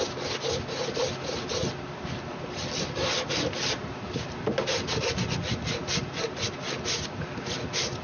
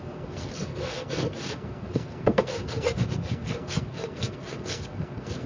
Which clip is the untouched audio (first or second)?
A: first